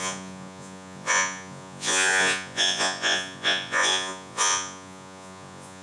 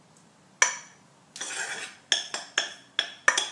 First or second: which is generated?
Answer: first